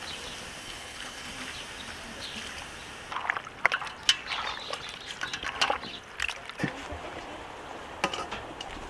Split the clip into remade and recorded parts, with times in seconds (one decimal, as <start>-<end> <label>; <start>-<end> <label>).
0.0-0.6 recorded; 0.6-1.3 remade; 1.3-8.9 recorded

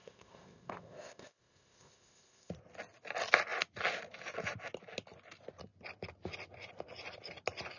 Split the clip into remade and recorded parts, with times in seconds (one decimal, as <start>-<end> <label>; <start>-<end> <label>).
0.0-2.5 remade; 2.5-7.8 recorded

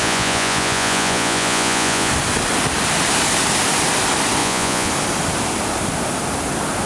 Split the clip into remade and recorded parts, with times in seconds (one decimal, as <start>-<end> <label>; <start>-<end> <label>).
0.0-2.1 remade; 2.1-4.4 recorded; 4.4-4.9 remade; 4.9-6.9 recorded

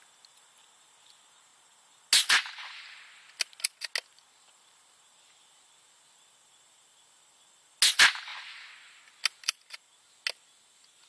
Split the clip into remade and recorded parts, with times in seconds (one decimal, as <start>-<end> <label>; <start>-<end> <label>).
0.0-11.1 recorded

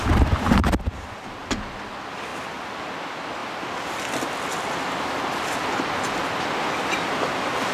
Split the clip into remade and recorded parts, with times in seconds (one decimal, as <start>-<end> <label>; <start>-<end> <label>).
0.0-2.3 recorded; 2.3-2.9 remade; 2.9-7.7 recorded

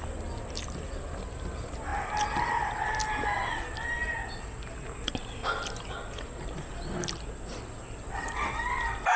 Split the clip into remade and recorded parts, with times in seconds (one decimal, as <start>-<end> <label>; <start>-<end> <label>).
0.0-9.2 recorded

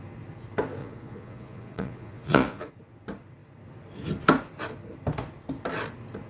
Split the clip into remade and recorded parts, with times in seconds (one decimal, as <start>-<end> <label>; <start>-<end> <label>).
0.0-0.8 recorded; 0.8-2.7 remade; 2.7-6.3 recorded